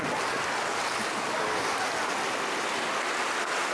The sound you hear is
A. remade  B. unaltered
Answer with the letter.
B